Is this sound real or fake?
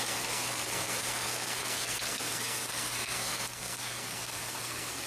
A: fake